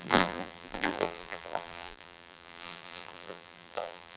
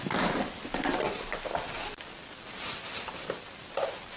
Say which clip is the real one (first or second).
second